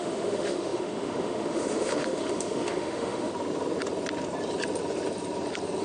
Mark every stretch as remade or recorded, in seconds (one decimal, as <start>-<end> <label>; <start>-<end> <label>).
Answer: 0.0-3.3 remade; 3.3-5.8 recorded